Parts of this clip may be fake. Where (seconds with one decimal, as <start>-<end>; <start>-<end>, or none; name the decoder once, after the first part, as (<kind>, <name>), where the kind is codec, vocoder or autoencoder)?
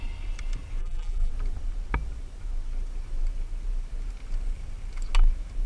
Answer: 0.8-1.3 (vocoder, BigVGAN v2)